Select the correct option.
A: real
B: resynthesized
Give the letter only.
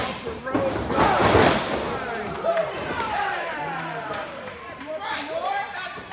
B